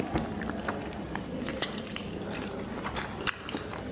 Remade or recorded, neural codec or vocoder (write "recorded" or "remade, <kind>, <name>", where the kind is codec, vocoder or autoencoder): recorded